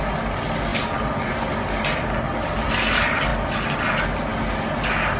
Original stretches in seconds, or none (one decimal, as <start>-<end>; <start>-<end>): 0.0-5.2